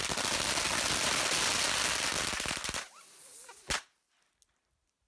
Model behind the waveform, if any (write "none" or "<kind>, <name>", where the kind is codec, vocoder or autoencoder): none